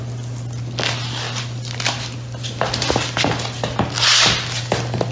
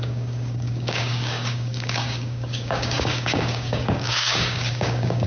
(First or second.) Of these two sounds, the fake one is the second